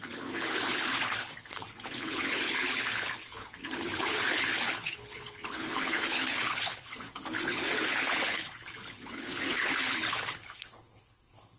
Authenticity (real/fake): fake